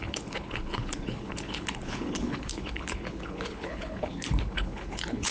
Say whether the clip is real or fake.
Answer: fake